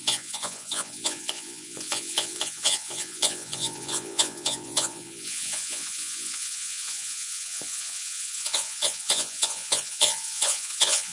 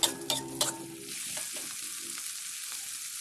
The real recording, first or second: second